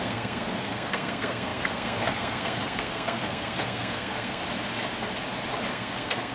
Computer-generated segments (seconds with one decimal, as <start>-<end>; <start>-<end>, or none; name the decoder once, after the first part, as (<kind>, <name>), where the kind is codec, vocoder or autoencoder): 0.0-4.4 (codec, SNAC); 5.7-6.3